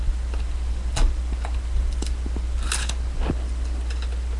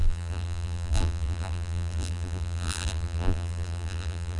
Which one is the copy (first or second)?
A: second